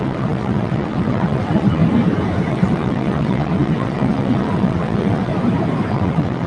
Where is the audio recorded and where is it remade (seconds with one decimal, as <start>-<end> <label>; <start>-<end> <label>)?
0.0-1.8 remade; 1.8-2.5 recorded; 2.5-5.3 remade; 5.3-5.9 recorded; 5.9-6.5 remade